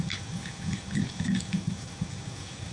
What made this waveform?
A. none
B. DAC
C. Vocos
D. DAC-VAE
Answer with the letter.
B